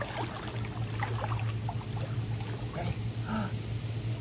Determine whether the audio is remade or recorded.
recorded